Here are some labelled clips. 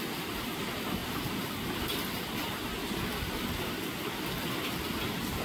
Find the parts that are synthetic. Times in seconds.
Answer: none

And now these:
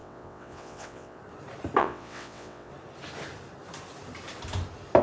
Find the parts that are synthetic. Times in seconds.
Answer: 0.0-1.2 (vocoder, WaveNeXt); 1.8-2.7

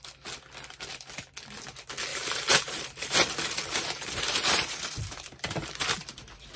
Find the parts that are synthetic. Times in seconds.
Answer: 2.1-6.1 (vocoder, BigVGAN v2)